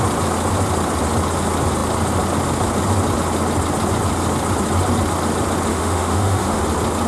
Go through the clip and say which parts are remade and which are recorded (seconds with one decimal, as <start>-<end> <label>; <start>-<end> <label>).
0.0-5.7 recorded; 5.7-6.6 remade; 6.6-7.1 recorded